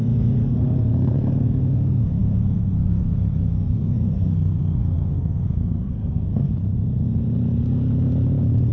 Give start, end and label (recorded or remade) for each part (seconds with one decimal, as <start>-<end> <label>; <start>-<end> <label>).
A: 0.0-6.5 remade; 6.5-8.7 recorded